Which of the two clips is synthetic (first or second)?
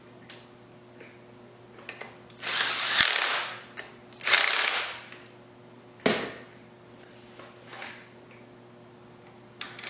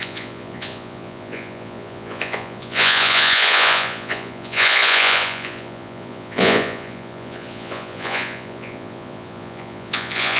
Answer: second